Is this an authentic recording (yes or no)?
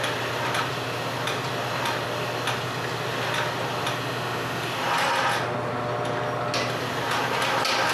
yes